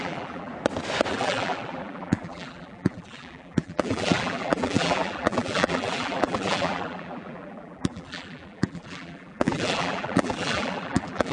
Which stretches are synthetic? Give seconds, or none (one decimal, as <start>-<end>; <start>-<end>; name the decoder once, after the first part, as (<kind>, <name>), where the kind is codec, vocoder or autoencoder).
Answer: 0.0-0.5 (vocoder, BigVGAN v2); 1.1-11.3